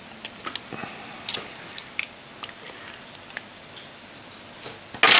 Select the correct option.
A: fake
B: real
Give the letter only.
B